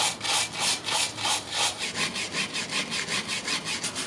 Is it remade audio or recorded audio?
recorded